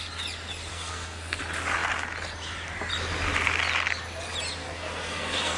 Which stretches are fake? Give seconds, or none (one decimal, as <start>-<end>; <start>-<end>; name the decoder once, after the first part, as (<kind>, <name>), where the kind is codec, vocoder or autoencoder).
0.7-1.4 (codec, SNAC); 4.6-5.6